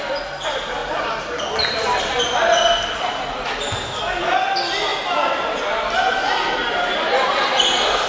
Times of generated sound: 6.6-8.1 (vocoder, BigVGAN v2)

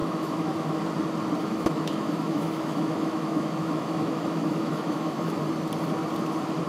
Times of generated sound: 0.0-0.8 (autoencoder, DAC-VAE); 1.4-5.4

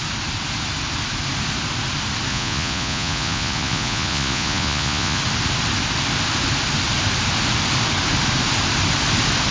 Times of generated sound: 2.3-5.2 (vocoder, Vocos)